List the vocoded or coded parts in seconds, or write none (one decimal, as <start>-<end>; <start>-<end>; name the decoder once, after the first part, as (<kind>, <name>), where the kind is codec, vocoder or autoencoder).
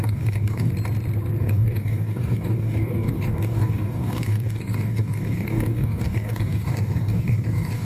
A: 0.0-0.7 (codec, DAC); 1.4-7.8